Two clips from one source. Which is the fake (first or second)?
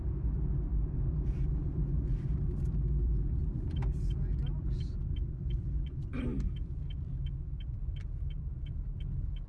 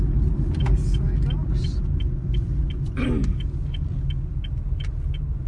first